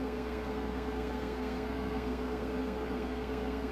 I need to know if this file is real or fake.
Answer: fake